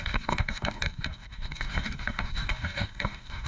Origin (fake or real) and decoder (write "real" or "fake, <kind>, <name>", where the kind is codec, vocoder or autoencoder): fake, codec, DAC